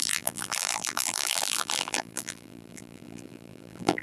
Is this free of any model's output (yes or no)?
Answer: no